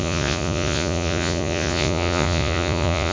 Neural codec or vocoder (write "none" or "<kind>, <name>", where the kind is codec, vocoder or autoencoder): vocoder, Vocos